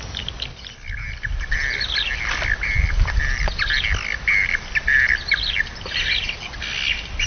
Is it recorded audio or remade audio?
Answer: recorded